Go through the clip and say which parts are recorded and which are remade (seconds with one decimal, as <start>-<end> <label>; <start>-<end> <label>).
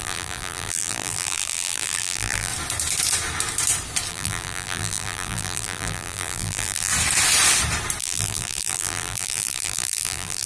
0.0-2.5 remade; 2.5-4.1 recorded; 4.1-6.9 remade; 6.9-8.0 recorded; 8.0-10.5 remade